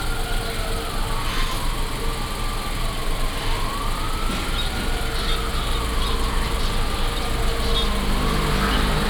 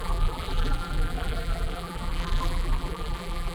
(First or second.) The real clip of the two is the first